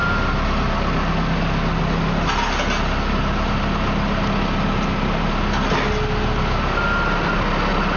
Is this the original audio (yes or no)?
yes